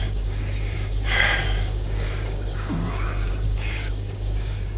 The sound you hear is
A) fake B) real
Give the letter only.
A